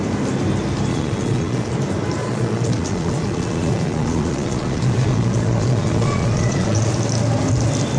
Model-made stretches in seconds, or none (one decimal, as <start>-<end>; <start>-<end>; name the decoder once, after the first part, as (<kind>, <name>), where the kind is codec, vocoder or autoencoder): 0.9-1.7 (vocoder, Vocos); 2.2-6.9